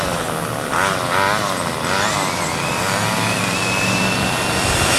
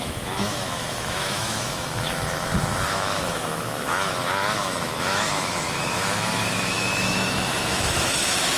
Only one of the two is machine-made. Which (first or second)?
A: second